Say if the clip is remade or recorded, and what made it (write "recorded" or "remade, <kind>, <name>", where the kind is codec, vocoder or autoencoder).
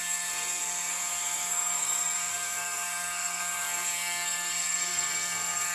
remade, codec, SNAC